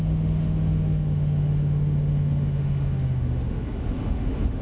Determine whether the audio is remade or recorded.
remade